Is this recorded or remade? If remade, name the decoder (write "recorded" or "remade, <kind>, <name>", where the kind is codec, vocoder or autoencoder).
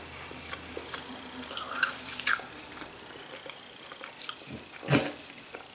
recorded